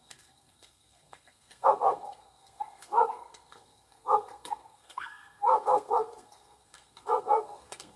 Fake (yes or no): yes